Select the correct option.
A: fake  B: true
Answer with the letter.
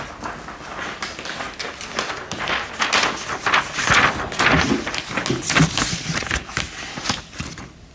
B